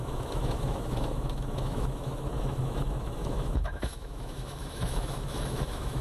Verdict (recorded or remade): remade